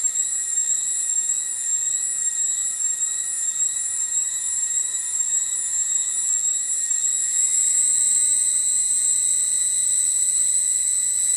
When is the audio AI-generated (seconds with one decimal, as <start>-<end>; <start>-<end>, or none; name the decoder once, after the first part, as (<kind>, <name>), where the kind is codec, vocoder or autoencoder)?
none